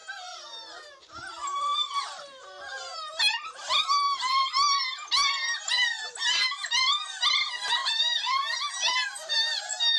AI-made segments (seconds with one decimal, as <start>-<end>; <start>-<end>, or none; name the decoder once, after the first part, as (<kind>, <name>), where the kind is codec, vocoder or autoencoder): none